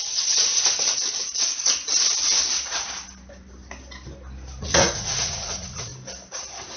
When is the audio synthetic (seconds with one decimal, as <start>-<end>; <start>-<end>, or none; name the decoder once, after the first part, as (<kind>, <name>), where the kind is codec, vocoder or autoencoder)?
0.0-0.5 (vocoder, Vocos); 4.6-5.9